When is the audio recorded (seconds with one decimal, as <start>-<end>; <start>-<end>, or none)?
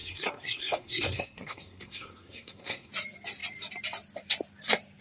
2.9-5.0